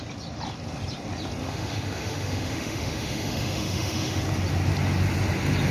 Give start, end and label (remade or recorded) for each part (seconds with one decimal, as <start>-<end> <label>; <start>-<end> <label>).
0.0-1.4 recorded; 1.4-4.2 remade; 4.2-5.7 recorded